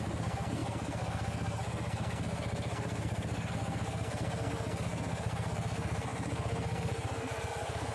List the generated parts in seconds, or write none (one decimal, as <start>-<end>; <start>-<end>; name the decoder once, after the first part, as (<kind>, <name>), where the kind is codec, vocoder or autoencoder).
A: 0.0-7.9 (codec, SNAC)